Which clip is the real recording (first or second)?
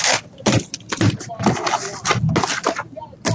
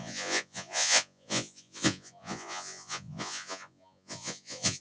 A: first